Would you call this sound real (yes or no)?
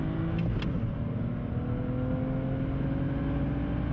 yes